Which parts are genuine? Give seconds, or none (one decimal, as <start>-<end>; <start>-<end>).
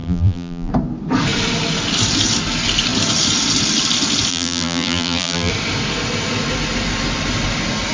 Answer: 0.7-4.3; 5.5-7.9